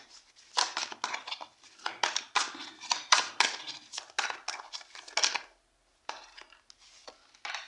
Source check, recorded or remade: recorded